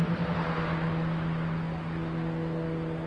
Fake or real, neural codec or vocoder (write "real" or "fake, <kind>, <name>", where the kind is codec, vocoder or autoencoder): real